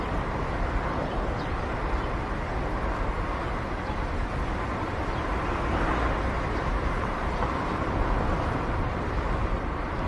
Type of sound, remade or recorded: recorded